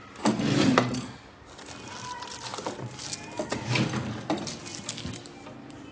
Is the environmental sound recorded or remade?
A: recorded